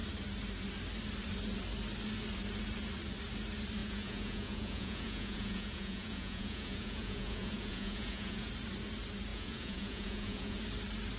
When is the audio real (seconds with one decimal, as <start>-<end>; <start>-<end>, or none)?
0.0-3.8; 8.5-9.3; 10.6-11.2